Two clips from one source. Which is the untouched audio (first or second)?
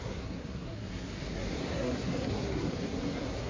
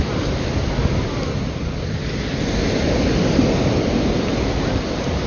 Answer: second